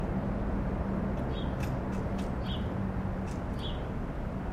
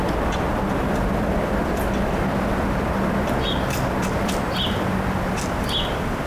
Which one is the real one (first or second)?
first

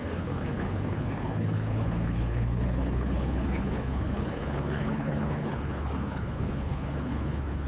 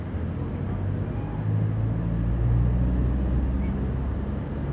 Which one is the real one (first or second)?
second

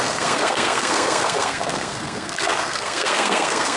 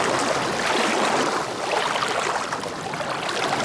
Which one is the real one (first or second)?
second